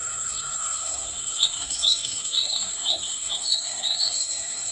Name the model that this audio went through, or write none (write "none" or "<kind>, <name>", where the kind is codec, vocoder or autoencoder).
codec, SNAC